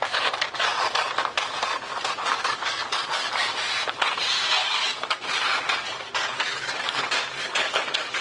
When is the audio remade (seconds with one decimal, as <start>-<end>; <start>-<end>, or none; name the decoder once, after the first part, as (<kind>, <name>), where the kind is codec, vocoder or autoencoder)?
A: 2.3-3.5 (codec, DAC); 4.6-5.3; 6.2-8.2